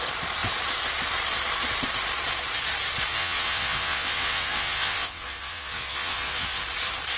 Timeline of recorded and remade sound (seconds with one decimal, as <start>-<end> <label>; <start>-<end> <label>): 0.0-3.1 recorded; 3.1-6.6 remade; 6.6-7.2 recorded